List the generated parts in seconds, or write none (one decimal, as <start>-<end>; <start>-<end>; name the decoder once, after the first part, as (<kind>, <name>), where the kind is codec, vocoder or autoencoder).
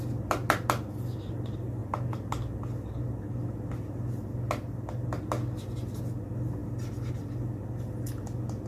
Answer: none